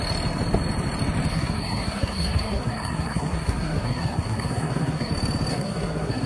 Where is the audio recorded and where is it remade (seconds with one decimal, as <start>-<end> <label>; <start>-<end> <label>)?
0.0-1.3 recorded; 1.3-5.1 remade; 5.1-5.5 recorded; 5.5-6.3 remade